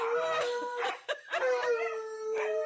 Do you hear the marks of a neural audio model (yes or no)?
yes